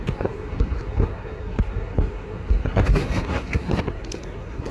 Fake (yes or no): yes